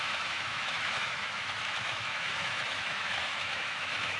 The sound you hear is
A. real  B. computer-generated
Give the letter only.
B